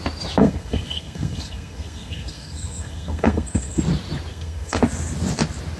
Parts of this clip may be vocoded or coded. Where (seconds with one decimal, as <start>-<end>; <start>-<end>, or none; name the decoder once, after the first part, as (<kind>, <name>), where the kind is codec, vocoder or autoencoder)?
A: 0.4-3.8 (codec, SNAC); 4.3-4.8